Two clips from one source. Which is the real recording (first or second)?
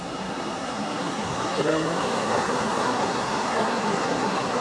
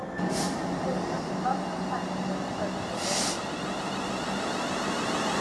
second